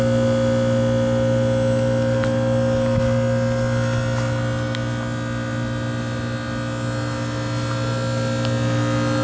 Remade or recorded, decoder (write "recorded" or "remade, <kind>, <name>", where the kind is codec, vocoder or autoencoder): recorded